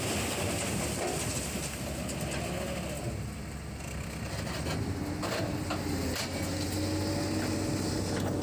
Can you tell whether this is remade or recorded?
recorded